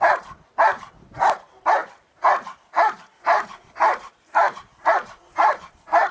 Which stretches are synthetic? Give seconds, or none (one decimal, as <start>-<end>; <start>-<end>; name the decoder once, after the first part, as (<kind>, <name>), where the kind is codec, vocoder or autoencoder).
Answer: 0.0-1.8 (vocoder, BigVGAN v2); 4.5-6.1